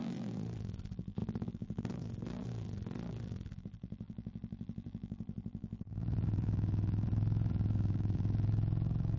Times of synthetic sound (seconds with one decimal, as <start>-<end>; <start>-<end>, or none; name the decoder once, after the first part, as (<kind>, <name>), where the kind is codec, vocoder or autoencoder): 0.0-9.2 (vocoder, BigVGAN v2)